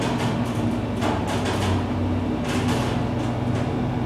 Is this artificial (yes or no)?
no